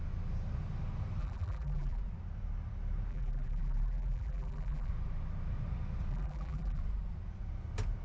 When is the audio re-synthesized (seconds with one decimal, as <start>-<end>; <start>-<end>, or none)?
1.2-2.0; 3.1-4.9; 6.1-6.8